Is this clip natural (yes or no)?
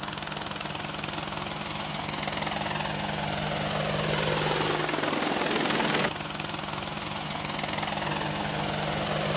yes